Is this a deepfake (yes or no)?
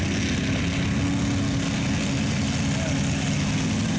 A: no